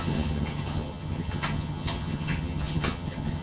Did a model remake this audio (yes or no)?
yes